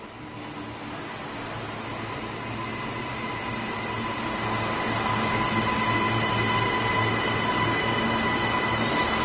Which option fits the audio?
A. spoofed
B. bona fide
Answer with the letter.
B